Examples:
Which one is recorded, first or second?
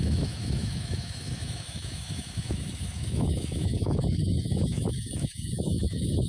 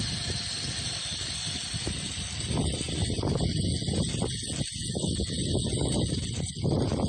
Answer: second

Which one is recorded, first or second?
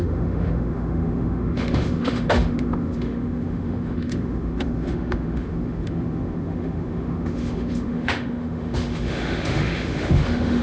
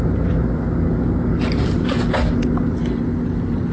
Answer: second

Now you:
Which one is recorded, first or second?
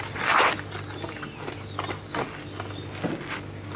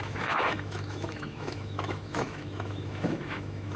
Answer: first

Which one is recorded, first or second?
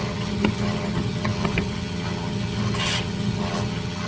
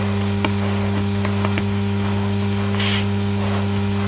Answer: second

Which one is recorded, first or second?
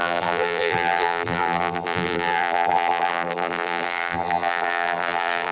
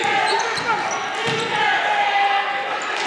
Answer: second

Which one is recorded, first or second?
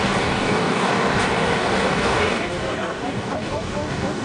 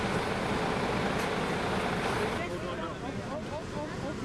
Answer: second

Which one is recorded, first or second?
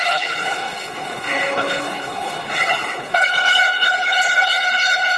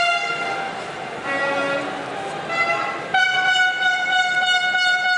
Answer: second